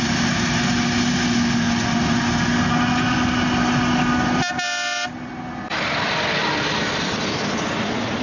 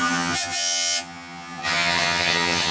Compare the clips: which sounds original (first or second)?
first